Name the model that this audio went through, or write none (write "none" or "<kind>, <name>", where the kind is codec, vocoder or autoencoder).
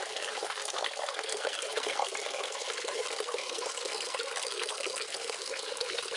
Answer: codec, SNAC